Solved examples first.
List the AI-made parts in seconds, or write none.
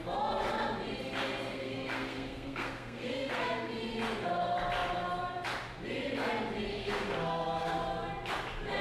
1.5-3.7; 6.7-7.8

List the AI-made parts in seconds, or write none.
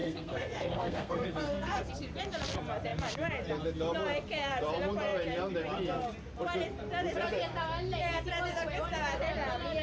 0.0-1.9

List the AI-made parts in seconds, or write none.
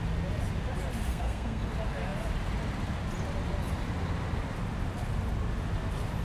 1.1-1.7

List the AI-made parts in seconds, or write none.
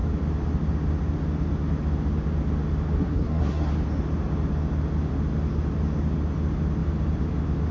3.0-3.7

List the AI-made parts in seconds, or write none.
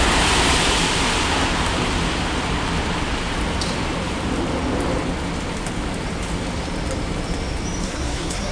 7.8-8.5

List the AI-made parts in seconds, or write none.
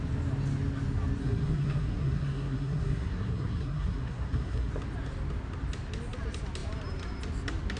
1.2-4.7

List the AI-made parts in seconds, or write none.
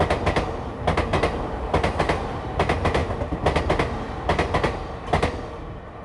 none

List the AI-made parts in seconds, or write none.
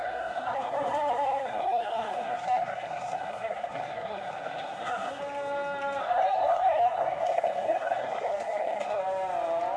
0.0-5.2; 6.0-9.0